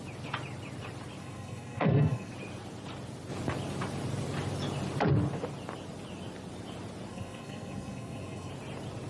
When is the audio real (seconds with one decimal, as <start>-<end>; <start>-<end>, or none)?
0.0-1.2; 2.3-7.1; 8.5-9.1